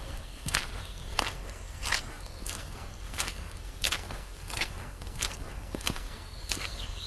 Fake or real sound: fake